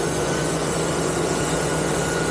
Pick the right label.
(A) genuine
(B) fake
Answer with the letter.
B